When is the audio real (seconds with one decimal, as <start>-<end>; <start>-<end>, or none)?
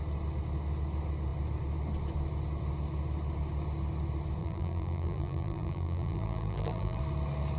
0.0-4.4; 7.0-7.6